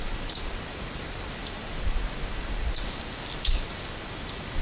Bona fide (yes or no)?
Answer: yes